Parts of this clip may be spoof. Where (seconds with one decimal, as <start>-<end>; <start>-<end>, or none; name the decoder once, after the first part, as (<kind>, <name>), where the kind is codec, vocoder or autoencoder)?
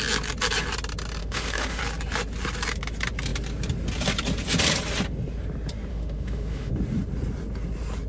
1.2-1.8 (autoencoder, DAC-VAE); 5.9-6.7